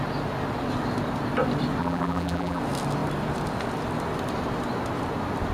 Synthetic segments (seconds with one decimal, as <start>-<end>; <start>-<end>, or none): 1.8-2.6